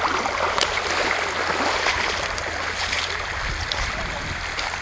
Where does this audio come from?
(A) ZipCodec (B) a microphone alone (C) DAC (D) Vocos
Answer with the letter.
B